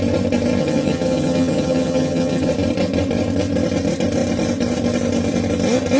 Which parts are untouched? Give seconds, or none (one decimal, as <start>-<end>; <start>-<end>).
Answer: 0.0-0.6; 2.5-6.0

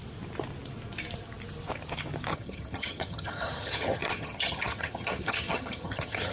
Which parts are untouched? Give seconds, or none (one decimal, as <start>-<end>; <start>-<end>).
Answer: 0.0-2.3

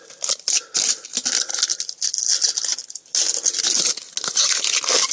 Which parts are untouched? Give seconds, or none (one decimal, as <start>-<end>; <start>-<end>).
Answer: 0.0-5.1

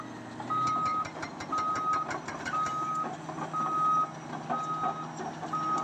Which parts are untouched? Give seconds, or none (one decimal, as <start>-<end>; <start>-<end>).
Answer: 0.0-5.8

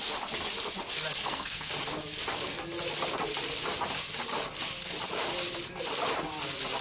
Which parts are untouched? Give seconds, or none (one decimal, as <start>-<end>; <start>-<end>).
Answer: 0.0-1.2; 1.7-6.8